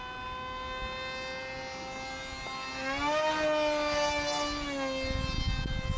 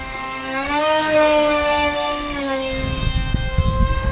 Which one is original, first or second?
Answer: first